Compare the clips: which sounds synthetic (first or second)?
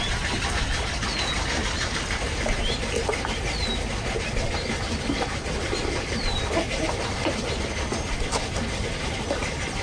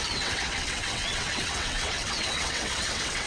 second